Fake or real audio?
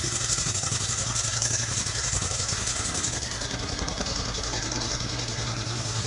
fake